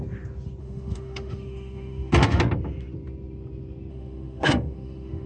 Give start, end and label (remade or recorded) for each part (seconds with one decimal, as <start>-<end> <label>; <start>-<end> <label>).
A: 0.0-0.6 recorded; 0.6-2.4 remade; 2.4-3.9 recorded; 3.9-5.3 remade